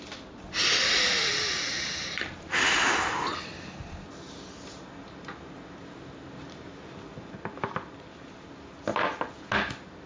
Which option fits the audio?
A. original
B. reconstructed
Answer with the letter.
A